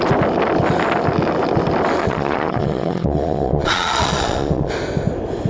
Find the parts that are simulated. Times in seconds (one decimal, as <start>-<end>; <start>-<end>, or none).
2.0-4.7